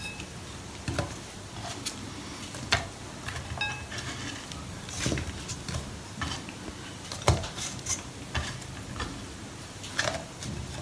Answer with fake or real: real